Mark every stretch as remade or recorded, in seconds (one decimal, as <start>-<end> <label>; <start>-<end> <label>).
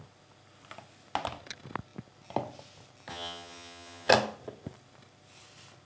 0.0-3.1 recorded; 3.1-4.1 remade; 4.1-5.9 recorded